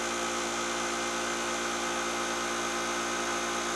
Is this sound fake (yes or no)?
no